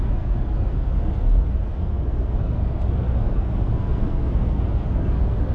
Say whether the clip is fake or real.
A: fake